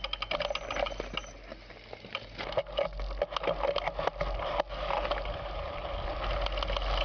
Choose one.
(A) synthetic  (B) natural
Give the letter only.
B